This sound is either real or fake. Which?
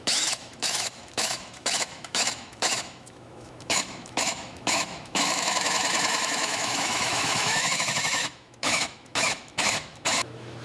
fake